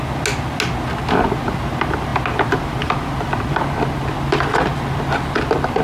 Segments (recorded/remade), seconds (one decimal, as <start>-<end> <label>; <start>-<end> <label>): 0.0-5.8 recorded

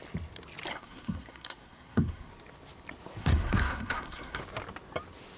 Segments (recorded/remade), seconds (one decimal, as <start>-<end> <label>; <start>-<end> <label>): 0.0-0.7 recorded; 0.7-2.3 remade; 2.3-3.2 recorded; 3.2-4.4 remade; 4.4-5.4 recorded

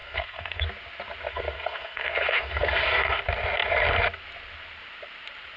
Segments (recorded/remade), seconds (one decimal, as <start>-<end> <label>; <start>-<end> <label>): 0.0-0.6 remade; 0.6-1.3 recorded; 1.3-3.2 remade; 3.2-5.6 recorded

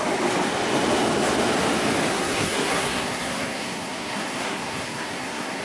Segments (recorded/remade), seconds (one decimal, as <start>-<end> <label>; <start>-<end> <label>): 0.0-2.1 recorded; 2.1-5.6 remade

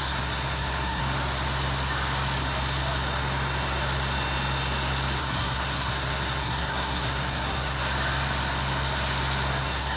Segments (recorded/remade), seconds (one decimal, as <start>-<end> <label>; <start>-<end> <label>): 0.0-1.0 remade; 1.0-5.2 recorded; 5.2-7.8 remade; 7.8-9.6 recorded; 9.6-10.0 remade

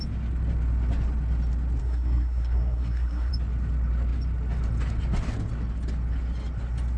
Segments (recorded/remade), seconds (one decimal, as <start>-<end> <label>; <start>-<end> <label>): 0.0-1.8 recorded; 1.8-3.3 remade; 3.3-7.0 recorded

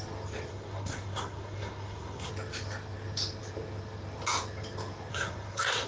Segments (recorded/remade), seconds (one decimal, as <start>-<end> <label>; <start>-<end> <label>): 0.0-0.5 recorded; 0.5-2.3 remade; 2.3-5.1 recorded; 5.1-5.9 remade